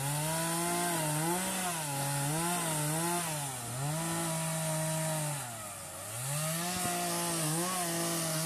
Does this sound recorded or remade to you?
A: recorded